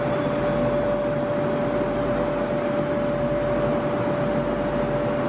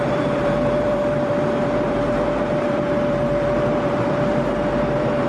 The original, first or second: first